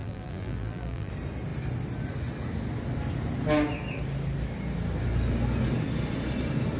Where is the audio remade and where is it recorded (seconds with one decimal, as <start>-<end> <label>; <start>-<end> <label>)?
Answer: 0.0-1.1 remade; 1.1-6.8 recorded